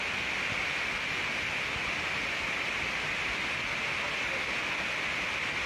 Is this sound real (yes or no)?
yes